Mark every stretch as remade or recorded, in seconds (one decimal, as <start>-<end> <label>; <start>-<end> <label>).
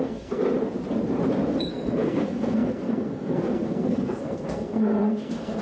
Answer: 0.0-0.4 remade; 0.4-1.6 recorded; 1.6-5.6 remade